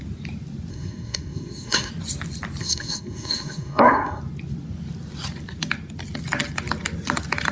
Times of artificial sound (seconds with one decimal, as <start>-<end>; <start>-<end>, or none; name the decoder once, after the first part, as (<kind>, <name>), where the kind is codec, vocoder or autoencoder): 0.7-1.9 (codec, SNAC); 2.6-4.2